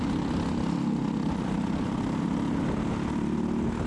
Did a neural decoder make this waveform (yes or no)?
no